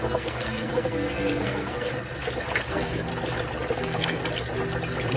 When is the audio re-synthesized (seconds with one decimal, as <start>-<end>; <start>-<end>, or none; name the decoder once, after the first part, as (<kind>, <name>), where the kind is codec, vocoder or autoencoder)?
0.0-1.9 (codec, SNAC); 2.7-3.1; 3.8-4.2